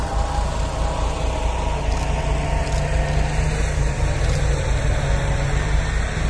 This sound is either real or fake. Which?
real